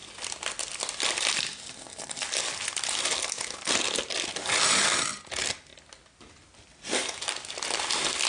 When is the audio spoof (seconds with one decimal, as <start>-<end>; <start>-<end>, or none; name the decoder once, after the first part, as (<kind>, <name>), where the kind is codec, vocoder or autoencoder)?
none